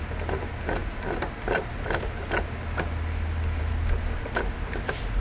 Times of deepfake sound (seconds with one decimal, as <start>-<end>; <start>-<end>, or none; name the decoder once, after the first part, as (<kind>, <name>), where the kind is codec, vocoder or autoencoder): none